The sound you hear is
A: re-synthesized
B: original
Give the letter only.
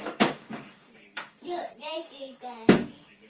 A